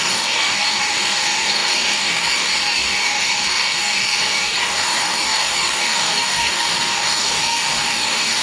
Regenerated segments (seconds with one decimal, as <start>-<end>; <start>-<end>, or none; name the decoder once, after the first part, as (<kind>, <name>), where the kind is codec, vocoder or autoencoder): 0.0-8.4 (codec, DAC)